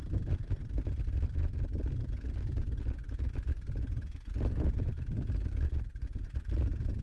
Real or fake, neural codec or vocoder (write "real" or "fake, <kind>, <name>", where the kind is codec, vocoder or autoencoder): real